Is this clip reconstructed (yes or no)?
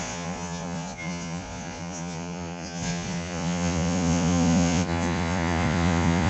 yes